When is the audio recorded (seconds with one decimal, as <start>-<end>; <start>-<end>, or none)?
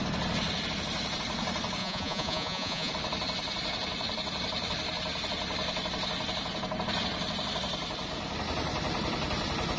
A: 0.0-1.8; 2.9-9.8